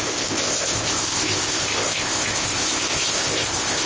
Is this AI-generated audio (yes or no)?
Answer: yes